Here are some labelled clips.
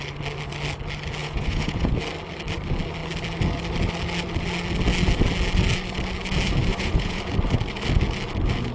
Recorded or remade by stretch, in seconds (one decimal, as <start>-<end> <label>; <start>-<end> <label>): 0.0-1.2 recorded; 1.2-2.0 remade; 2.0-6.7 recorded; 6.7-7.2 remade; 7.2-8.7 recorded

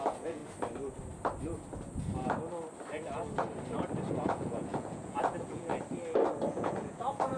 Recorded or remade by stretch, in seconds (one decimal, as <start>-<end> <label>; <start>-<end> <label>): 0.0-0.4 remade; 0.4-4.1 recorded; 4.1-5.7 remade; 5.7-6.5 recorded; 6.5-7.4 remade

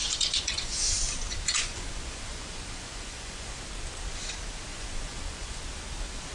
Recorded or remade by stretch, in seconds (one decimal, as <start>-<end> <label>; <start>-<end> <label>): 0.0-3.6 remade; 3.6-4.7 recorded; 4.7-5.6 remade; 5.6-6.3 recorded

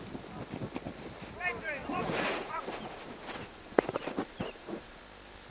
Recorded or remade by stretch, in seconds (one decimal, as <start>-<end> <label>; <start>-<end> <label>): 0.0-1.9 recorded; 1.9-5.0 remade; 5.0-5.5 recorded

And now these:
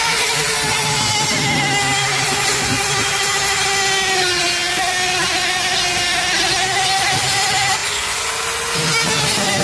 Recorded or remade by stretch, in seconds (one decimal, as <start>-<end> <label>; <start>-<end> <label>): 0.0-2.3 recorded; 2.3-2.8 remade; 2.8-7.8 recorded; 7.8-8.3 remade; 8.3-9.6 recorded